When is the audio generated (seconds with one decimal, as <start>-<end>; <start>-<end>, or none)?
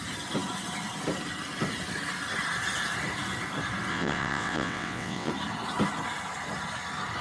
3.9-5.3